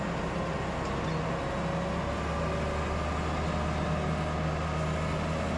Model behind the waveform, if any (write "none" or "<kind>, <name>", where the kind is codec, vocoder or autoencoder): none